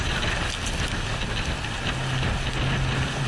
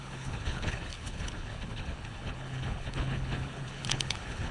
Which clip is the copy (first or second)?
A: second